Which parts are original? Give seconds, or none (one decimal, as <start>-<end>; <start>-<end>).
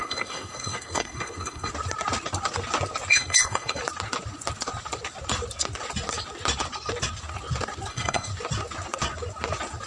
1.7-3.1; 3.8-7.9; 8.3-9.9